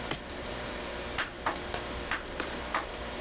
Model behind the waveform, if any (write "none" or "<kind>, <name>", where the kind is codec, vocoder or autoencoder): vocoder, BigVGAN v2